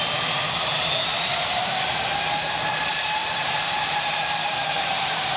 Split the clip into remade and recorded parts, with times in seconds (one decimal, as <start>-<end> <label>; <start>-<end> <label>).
0.0-1.1 recorded; 1.1-2.0 remade; 2.0-3.2 recorded; 3.2-5.4 remade